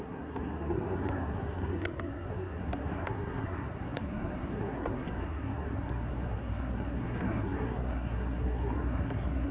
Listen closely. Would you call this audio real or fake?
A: fake